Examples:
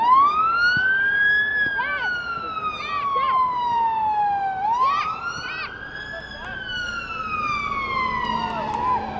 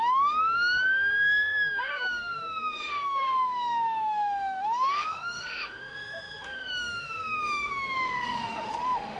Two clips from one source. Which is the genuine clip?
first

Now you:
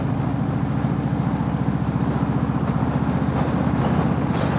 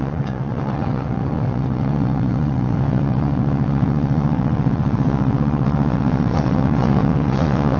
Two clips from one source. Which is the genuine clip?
first